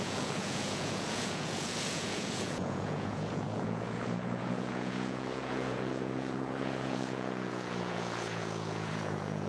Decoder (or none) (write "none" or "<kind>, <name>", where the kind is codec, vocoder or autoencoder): vocoder, Vocos